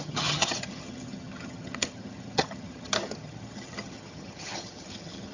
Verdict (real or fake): fake